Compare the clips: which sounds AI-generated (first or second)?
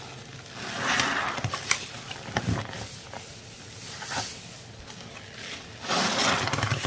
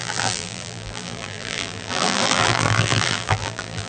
second